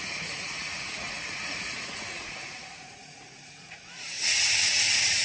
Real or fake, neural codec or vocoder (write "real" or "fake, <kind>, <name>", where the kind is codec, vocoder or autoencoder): fake, vocoder, Vocos